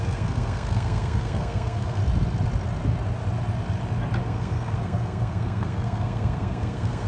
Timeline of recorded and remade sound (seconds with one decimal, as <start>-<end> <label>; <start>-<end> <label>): 0.0-2.0 remade; 2.0-4.2 recorded; 4.2-7.1 remade